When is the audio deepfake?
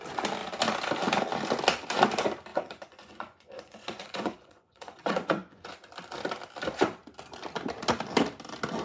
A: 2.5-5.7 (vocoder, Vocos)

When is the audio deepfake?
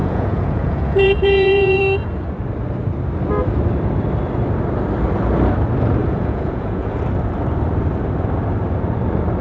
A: 0.0-1.8 (vocoder, Vocos); 6.0-7.0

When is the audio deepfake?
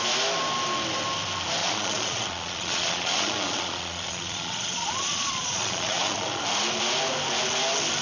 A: 1.6-6.4 (vocoder, Vocos)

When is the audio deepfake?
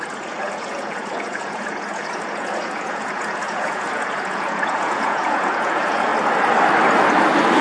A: 0.0-6.1 (vocoder, Vocos)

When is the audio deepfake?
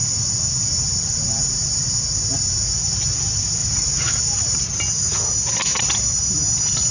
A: 3.6-4.2 (vocoder, Vocos)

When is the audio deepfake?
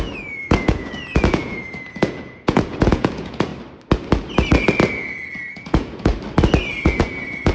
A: 0.0-3.5 (vocoder, Vocos); 5.1-6.1; 6.7-7.5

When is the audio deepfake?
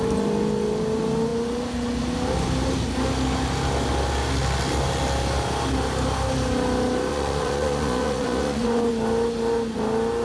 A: 7.1-8.9 (vocoder, Vocos)